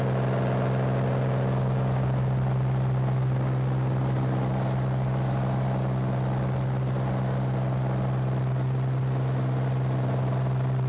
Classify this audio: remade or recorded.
recorded